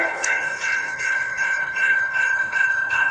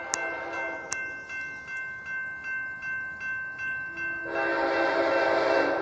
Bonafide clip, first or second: second